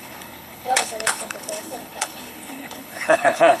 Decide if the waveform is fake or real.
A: fake